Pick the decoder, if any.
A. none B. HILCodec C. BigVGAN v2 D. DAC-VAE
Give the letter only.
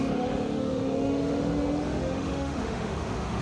D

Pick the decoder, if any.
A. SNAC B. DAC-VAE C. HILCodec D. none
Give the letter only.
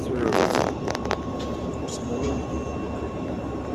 D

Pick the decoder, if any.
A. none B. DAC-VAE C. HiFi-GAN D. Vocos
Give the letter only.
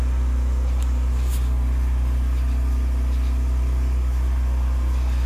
A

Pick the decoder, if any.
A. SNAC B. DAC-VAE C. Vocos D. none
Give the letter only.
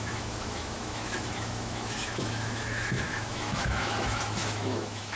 B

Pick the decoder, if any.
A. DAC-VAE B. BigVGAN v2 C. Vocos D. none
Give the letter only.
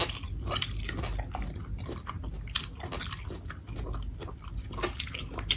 D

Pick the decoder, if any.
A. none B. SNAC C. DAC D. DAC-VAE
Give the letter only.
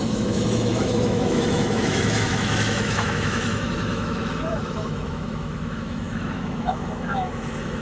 D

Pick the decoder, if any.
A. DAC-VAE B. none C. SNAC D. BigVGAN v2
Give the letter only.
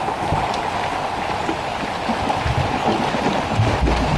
B